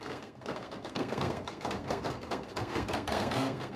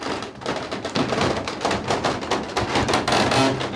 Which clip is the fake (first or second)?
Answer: first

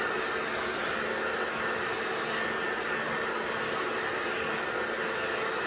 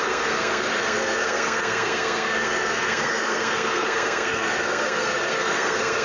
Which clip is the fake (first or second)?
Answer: second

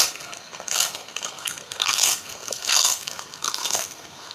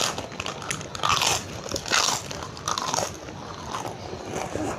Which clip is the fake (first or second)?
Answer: first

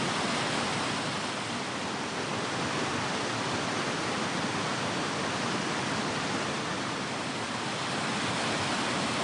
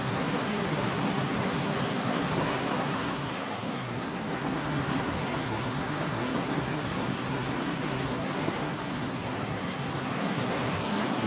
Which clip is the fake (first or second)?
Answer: second